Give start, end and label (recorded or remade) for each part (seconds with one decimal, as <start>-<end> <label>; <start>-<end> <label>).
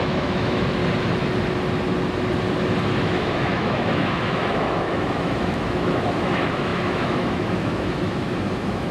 0.0-0.8 remade; 0.8-3.0 recorded; 3.0-8.9 remade